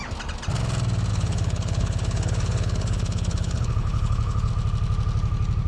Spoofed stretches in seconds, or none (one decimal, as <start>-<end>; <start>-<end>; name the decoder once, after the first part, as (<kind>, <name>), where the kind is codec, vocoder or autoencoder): 1.1-4.5 (codec, HILCodec)